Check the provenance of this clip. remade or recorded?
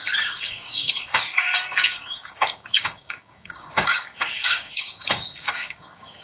remade